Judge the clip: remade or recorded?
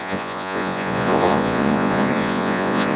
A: remade